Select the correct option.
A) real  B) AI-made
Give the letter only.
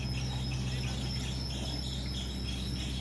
A